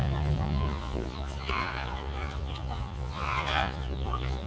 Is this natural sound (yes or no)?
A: no